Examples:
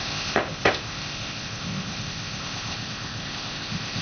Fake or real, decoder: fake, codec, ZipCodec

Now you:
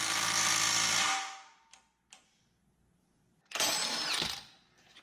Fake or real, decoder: real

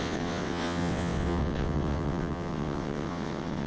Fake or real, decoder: fake, vocoder, WaveNeXt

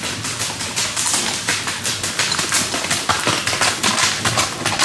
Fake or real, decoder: real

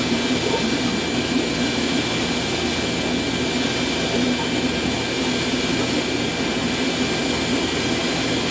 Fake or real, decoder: real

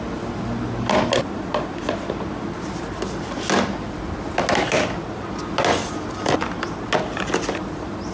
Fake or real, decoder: real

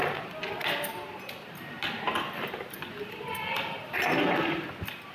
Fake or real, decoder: fake, vocoder, BigVGAN v2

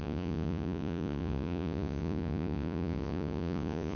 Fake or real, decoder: fake, vocoder, Vocos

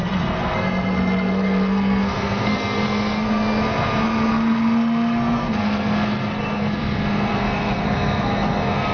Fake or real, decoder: fake, codec, SNAC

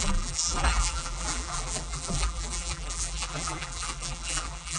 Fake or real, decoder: fake, vocoder, BigVGAN v2